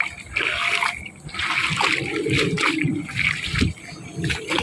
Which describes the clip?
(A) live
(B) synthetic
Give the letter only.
A